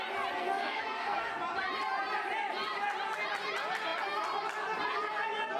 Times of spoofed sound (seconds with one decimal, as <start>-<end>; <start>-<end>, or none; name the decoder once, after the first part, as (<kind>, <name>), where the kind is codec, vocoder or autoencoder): 0.4-1.3 (codec, SNAC)